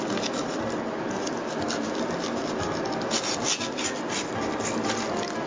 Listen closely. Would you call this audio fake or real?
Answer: real